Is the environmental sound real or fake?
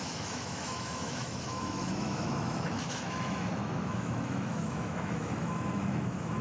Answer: fake